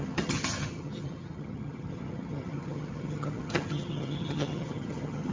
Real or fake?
fake